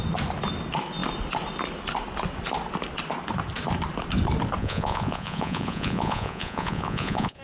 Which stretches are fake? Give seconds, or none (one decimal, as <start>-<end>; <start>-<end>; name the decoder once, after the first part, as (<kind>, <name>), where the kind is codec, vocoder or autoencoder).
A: 4.6-7.4 (vocoder, Vocos)